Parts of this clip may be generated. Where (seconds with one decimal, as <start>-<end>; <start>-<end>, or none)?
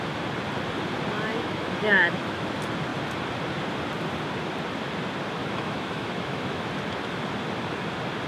1.3-2.5; 5.4-6.7